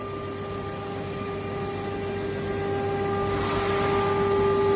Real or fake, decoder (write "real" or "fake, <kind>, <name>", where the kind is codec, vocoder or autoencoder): real